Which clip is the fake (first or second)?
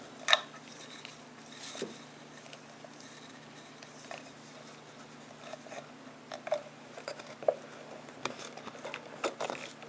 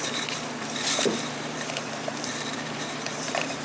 second